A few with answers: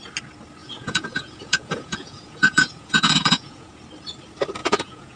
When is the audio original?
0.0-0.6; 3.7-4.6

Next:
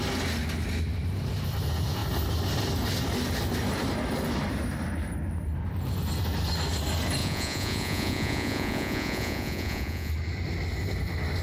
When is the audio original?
0.0-7.2; 10.1-11.4

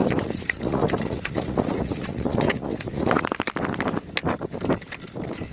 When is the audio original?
3.3-5.5

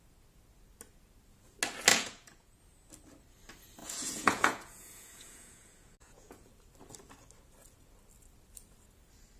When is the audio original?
0.0-1.9; 2.6-3.8; 6.5-9.4

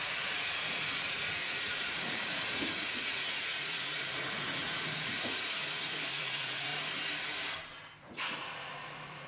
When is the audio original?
6.7-8.0

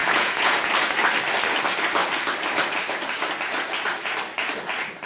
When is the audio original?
0.7-5.1

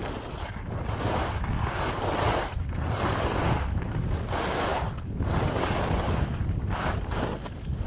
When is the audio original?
0.0-7.9